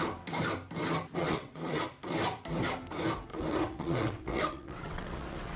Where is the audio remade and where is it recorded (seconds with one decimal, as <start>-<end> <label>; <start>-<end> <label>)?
0.0-1.2 recorded; 1.2-1.8 remade; 1.8-3.3 recorded; 3.3-5.6 remade

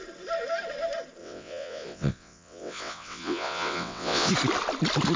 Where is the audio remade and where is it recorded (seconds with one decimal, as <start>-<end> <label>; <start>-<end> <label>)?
0.0-1.2 recorded; 1.2-4.3 remade; 4.3-5.2 recorded

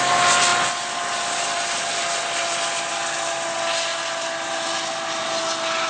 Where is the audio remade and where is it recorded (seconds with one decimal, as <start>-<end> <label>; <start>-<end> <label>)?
0.0-5.9 recorded

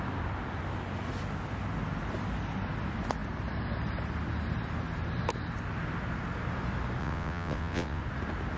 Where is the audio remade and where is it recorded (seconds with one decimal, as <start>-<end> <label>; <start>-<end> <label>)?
0.0-7.0 recorded; 7.0-8.0 remade; 8.0-8.6 recorded

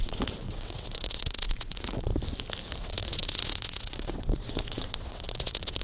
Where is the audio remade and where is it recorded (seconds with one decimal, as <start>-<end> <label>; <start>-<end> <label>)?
0.0-2.1 remade; 2.1-2.8 recorded; 2.8-5.8 remade